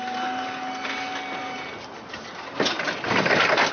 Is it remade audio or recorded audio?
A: recorded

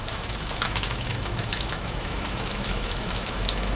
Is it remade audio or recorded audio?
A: remade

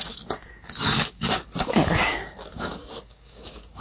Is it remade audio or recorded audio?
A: remade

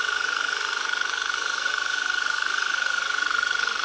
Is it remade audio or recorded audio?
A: remade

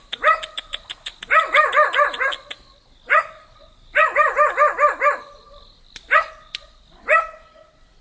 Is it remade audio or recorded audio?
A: recorded